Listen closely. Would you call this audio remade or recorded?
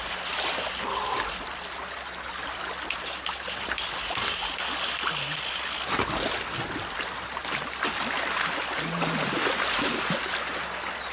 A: recorded